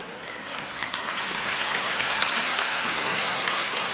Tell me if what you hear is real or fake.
fake